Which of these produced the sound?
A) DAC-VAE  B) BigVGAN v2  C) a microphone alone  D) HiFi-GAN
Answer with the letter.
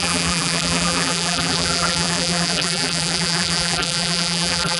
B